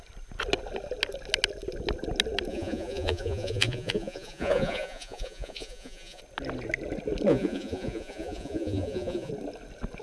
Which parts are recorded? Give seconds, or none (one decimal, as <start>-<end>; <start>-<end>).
0.0-2.5; 6.2-7.3; 9.3-10.0